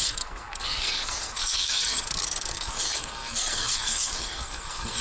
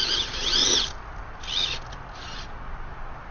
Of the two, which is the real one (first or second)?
second